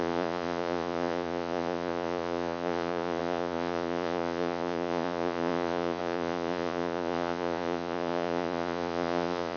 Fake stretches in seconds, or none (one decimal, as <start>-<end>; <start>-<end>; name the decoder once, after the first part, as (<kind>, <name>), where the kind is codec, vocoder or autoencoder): 0.0-9.6 (vocoder, Vocos)